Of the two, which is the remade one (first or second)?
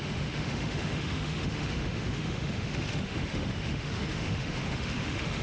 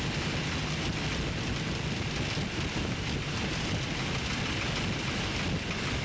first